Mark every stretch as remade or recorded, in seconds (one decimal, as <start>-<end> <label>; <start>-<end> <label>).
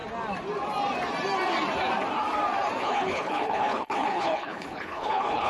0.0-2.8 recorded; 2.8-5.5 remade